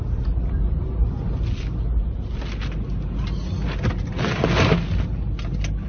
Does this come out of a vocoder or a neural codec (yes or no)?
no